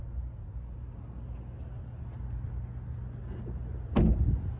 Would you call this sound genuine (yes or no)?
yes